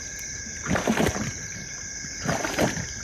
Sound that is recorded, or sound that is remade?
recorded